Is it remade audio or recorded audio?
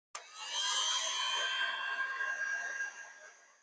recorded